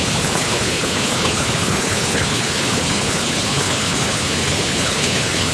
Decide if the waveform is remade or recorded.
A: remade